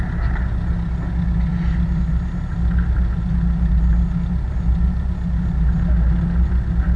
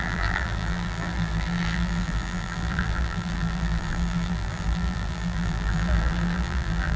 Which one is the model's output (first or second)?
second